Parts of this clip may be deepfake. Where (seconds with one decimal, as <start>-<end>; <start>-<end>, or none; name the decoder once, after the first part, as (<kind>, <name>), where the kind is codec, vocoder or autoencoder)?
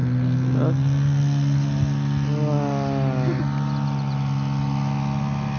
none